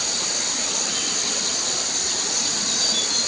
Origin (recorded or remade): recorded